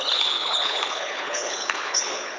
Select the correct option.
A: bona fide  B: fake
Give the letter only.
B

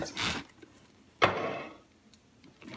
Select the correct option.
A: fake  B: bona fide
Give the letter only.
B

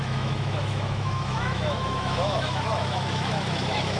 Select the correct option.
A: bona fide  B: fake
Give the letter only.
B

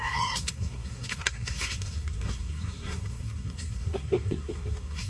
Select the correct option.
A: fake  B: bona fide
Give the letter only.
A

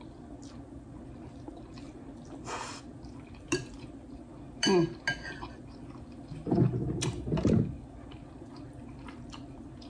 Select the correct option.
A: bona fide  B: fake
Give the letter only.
A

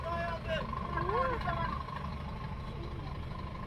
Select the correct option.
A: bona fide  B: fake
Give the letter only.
A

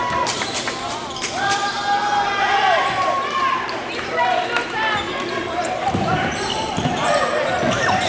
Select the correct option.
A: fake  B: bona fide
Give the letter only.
A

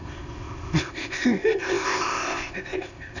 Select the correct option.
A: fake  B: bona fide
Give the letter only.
A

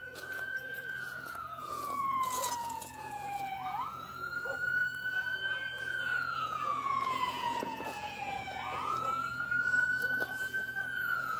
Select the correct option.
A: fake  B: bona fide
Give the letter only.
A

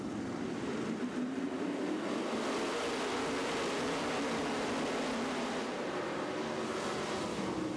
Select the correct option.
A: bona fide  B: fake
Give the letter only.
A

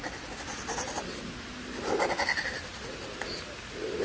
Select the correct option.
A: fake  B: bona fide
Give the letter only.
B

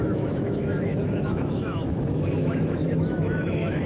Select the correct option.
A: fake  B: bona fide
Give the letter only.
A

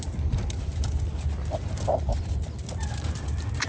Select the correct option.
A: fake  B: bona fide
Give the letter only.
B